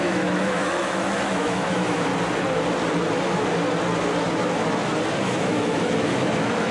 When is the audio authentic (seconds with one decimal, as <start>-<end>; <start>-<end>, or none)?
2.1-5.1